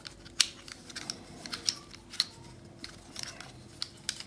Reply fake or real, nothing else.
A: real